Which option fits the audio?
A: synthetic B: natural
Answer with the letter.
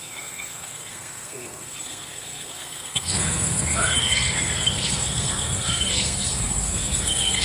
A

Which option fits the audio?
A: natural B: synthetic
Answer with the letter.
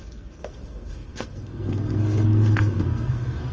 B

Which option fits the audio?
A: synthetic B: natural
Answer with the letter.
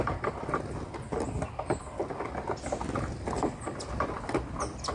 B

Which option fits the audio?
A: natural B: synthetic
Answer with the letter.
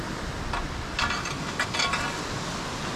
A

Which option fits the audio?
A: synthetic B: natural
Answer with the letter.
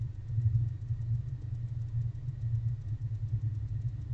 B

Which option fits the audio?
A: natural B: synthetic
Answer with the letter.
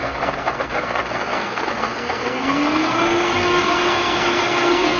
B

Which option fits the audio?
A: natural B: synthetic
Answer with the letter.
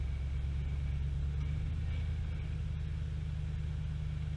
A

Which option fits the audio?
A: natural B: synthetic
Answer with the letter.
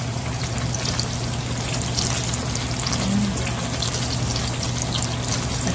A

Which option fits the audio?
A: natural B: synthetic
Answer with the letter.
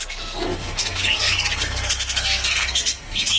B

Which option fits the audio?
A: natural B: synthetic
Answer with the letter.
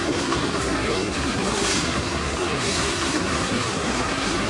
B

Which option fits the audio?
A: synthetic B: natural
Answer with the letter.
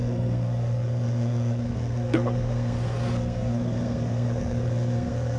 A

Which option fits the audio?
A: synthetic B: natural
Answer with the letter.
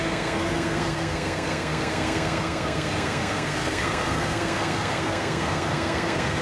A